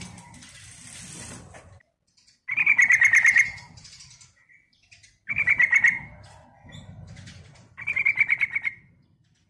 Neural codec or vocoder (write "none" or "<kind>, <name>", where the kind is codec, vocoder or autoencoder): none